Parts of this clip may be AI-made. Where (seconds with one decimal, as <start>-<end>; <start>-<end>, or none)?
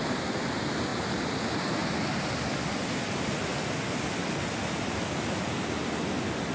none